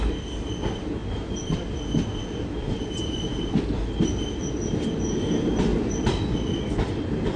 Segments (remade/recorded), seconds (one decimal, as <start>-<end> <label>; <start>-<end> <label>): 0.0-7.4 recorded